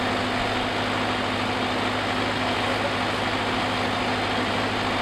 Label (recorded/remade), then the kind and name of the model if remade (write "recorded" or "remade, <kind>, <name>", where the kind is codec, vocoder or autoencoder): recorded